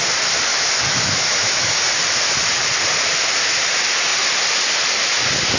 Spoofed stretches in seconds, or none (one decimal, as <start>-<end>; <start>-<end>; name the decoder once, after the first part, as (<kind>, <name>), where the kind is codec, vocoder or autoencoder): 0.5-1.7 (autoencoder, DAC-VAE)